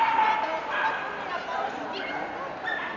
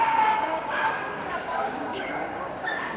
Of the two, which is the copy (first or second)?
second